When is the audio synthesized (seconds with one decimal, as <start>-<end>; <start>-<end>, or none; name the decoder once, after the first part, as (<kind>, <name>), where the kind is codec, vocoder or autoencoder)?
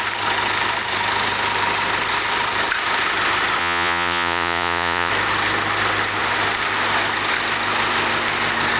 3.6-5.1 (vocoder, Vocos)